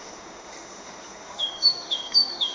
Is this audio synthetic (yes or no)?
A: yes